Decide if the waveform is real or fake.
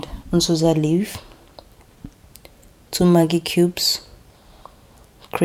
fake